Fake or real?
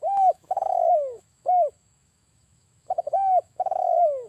fake